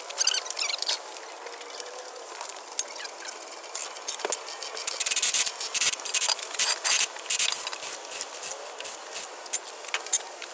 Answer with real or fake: real